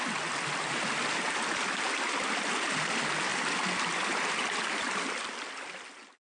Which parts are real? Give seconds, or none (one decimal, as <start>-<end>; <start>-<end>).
0.0-6.4